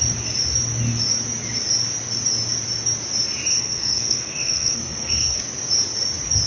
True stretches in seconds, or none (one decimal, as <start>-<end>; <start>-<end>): 0.0-3.5; 5.4-6.5